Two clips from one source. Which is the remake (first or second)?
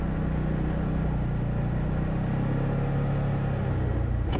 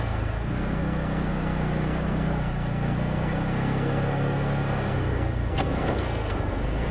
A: second